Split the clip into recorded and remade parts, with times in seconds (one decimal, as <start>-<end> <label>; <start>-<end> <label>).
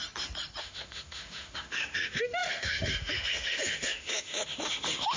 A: 0.0-0.6 recorded; 0.6-5.2 remade